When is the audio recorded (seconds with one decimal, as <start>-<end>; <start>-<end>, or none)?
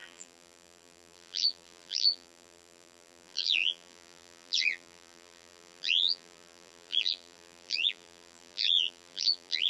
none